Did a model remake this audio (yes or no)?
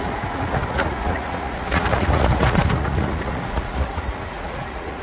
yes